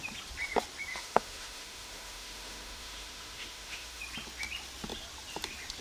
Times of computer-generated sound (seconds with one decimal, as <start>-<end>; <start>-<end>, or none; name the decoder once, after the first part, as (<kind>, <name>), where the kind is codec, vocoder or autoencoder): 0.9-4.0 (autoencoder, DAC-VAE)